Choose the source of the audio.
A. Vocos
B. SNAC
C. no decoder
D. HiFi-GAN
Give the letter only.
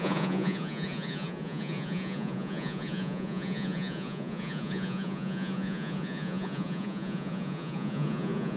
A